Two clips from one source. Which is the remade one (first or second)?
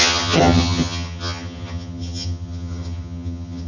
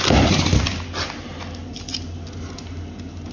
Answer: first